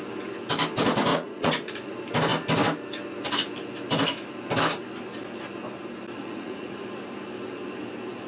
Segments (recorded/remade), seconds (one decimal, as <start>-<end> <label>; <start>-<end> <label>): 0.0-1.1 recorded; 1.1-1.9 remade; 1.9-6.2 recorded; 6.2-6.8 remade; 6.8-8.3 recorded